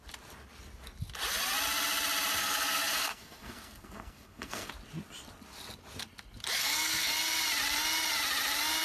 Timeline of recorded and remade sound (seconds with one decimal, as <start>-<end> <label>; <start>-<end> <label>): 0.0-2.4 recorded; 2.4-4.7 remade; 4.7-6.6 recorded; 6.6-7.1 remade; 7.1-8.8 recorded